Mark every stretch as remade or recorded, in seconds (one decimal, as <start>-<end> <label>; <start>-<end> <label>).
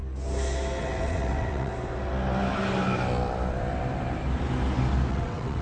0.0-0.8 recorded; 0.8-1.7 remade; 1.7-5.1 recorded; 5.1-5.6 remade